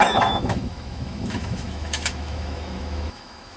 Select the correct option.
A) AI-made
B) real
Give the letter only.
A